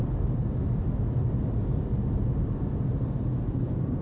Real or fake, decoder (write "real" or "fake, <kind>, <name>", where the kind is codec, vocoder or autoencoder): real